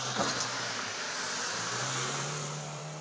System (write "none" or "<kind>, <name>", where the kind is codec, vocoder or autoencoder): vocoder, BigVGAN v2